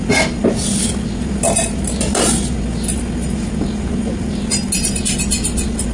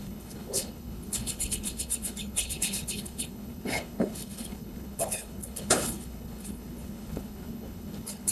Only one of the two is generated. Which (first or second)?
second